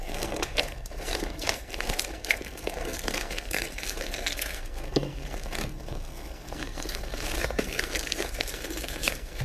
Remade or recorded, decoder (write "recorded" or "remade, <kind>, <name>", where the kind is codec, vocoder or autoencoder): remade, codec, SNAC